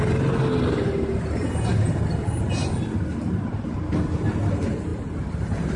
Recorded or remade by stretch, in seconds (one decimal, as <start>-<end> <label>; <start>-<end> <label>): 0.0-5.8 recorded